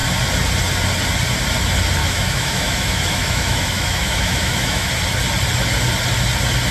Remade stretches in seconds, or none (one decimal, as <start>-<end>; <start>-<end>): 2.0-4.9